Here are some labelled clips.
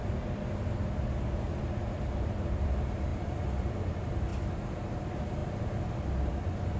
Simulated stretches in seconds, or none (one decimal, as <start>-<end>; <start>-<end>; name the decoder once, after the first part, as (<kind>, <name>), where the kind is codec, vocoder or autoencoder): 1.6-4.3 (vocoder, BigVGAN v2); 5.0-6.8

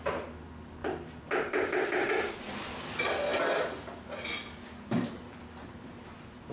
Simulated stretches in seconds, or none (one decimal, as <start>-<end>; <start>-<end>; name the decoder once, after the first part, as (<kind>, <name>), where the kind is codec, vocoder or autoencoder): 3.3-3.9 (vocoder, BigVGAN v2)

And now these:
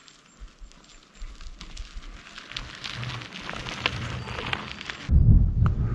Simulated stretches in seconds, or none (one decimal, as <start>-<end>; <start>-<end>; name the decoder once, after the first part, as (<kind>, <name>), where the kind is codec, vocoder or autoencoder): none

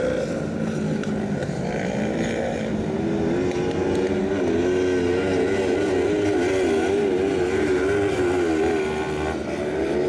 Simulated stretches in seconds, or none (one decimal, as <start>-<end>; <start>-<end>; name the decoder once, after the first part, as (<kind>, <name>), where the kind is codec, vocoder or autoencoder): 1.4-2.7 (vocoder, BigVGAN v2)

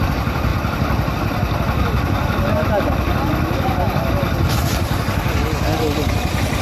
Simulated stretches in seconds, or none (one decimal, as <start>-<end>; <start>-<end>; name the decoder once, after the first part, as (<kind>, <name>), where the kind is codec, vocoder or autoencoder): none